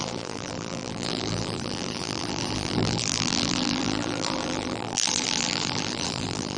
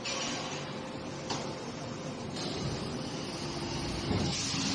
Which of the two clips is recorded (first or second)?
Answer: second